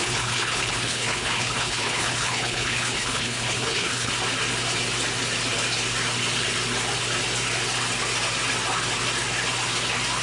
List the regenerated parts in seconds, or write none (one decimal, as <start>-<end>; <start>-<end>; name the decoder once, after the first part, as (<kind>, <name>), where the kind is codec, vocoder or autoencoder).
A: 0.0-4.1 (codec, HILCodec)